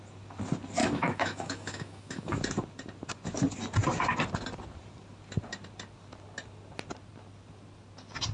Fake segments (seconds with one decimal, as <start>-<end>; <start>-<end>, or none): 0.8-2.4